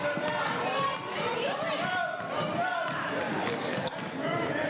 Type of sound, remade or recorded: recorded